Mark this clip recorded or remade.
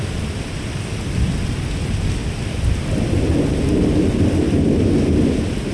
recorded